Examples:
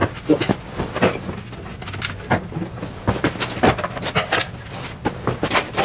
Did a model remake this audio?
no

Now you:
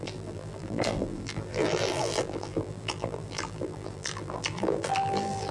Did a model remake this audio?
yes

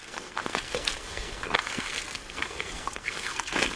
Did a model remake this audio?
yes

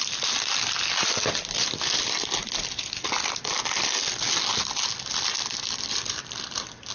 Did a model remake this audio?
no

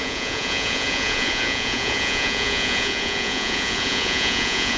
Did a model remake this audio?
yes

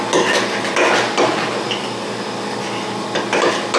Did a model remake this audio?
no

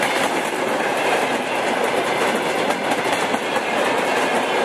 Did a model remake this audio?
no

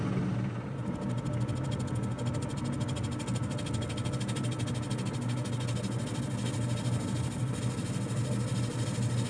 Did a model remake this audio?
no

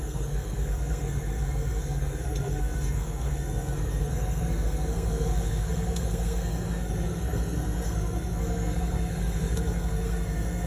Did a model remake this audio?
yes